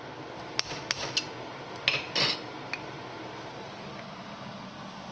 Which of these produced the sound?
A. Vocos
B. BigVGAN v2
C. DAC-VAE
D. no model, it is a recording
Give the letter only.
D